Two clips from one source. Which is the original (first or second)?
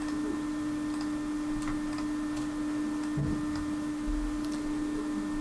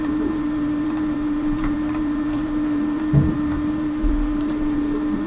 first